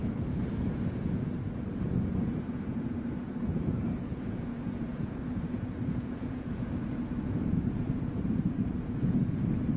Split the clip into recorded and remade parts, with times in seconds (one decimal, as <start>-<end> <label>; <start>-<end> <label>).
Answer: 0.0-9.8 remade